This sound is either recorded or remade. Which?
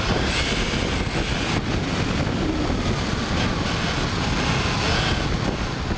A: recorded